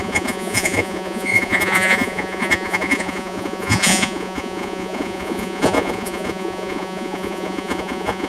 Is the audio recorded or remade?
remade